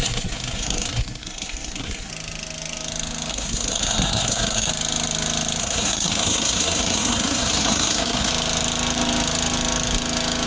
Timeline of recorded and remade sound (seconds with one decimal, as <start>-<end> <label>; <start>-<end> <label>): 0.0-2.1 remade; 2.1-3.3 recorded; 3.3-4.7 remade; 4.7-5.6 recorded; 5.6-8.3 remade; 8.3-10.5 recorded